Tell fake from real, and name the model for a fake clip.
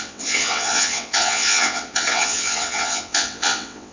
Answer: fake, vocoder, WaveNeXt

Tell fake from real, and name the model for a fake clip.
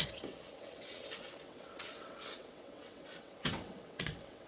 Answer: fake, vocoder, WaveNeXt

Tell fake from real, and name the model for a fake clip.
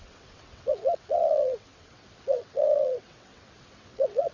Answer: fake, vocoder, WaveNeXt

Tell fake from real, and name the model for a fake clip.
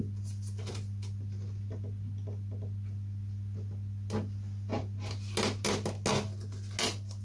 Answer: real